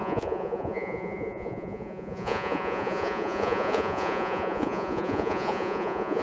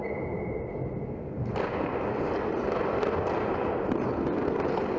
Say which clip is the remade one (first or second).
first